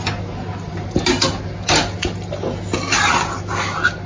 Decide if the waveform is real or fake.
real